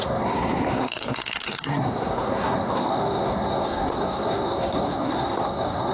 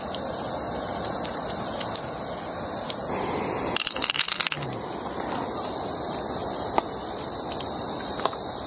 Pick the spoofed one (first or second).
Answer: first